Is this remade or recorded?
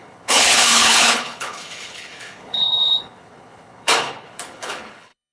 remade